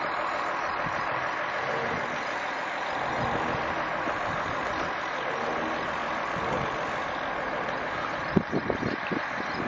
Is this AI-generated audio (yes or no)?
no